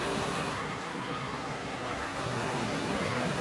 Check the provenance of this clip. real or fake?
fake